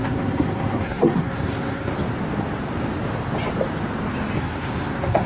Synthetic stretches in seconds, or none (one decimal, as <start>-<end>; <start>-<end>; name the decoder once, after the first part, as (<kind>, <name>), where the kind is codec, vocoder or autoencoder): 0.0-1.9 (codec, SNAC); 4.4-5.3